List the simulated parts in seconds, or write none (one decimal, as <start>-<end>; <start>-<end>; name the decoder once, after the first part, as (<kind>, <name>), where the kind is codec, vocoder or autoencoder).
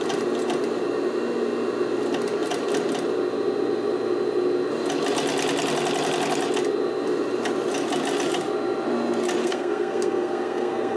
9.4-11.0 (codec, SNAC)